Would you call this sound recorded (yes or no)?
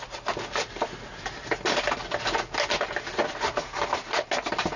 yes